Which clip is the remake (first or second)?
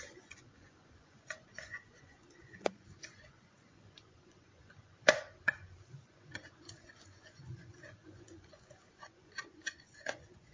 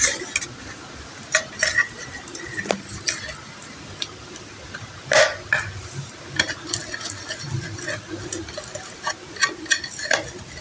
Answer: first